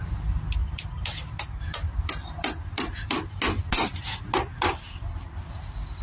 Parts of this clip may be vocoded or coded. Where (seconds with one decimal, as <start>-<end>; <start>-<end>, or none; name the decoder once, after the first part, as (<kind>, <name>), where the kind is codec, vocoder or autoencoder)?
none